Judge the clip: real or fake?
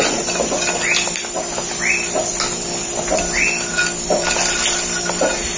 real